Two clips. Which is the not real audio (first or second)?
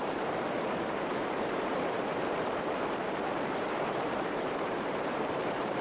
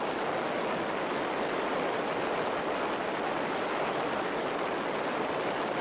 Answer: first